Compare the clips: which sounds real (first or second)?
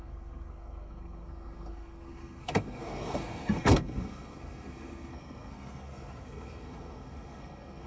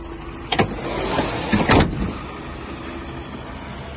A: second